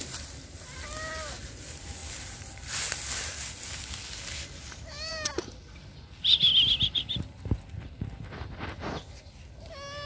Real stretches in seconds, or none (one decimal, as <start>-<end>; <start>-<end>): 0.0-10.1